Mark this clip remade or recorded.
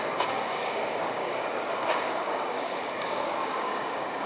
remade